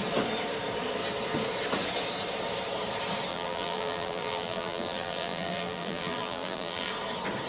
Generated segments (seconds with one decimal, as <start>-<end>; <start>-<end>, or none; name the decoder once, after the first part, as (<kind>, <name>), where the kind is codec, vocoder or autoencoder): 3.3-6.9 (vocoder, BigVGAN v2)